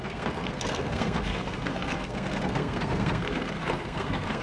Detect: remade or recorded remade